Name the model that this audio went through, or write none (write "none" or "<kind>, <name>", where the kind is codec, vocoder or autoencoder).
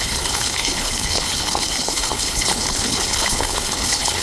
codec, HILCodec